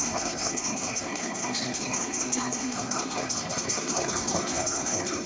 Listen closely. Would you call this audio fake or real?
fake